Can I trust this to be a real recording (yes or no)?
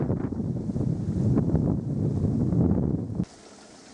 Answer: yes